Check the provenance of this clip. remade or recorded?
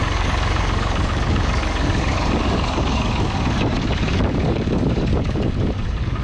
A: remade